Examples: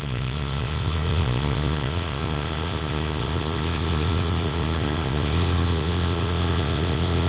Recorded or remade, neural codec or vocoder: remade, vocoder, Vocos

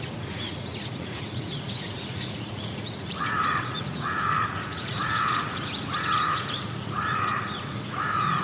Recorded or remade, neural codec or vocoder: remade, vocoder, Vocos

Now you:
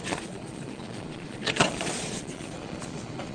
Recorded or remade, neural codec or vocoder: remade, vocoder, Vocos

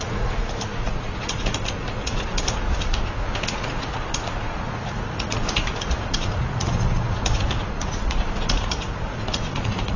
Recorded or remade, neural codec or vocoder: remade, vocoder, Vocos